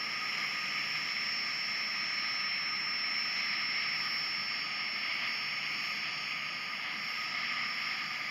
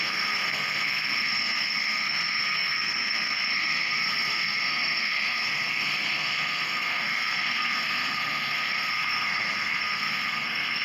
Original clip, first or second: first